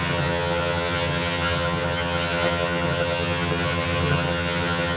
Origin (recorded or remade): remade